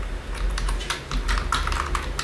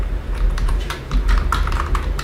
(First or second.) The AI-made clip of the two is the second